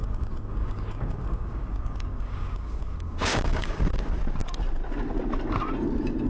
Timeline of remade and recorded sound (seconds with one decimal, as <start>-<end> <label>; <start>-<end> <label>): 0.0-3.8 remade; 3.8-6.3 recorded